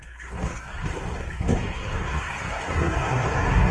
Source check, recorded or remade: remade